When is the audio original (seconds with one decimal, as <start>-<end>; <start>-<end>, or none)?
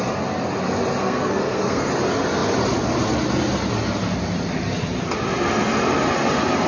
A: 0.0-1.0; 1.9-6.7